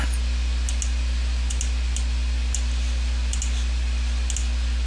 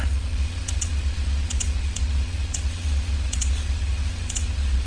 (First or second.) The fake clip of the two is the second